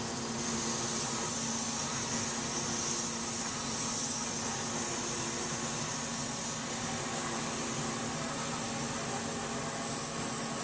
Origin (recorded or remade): recorded